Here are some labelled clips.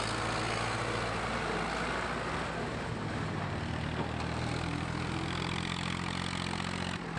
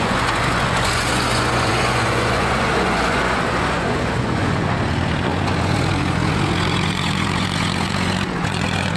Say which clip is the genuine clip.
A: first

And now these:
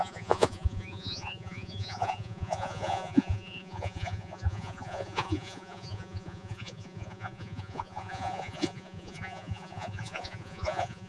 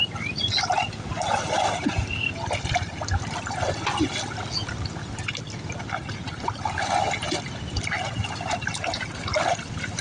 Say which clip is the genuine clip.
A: second